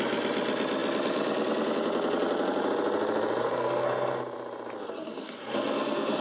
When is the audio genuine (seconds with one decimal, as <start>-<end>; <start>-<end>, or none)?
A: 0.0-3.4; 4.2-4.8